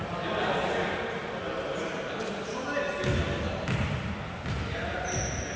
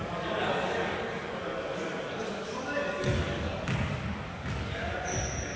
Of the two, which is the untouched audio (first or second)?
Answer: first